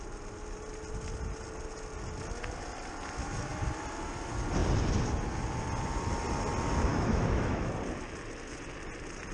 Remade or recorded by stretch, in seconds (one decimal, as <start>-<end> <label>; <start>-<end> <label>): 0.0-6.9 recorded; 6.9-7.7 remade; 7.7-9.3 recorded